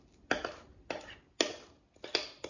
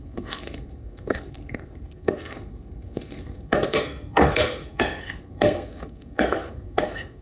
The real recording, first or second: first